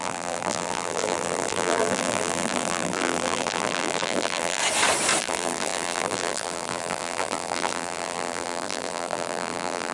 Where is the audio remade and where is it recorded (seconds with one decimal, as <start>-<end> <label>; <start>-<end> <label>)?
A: 0.0-4.6 remade; 4.6-5.2 recorded; 5.2-9.9 remade